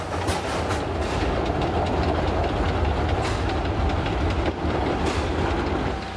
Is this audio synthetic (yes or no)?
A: no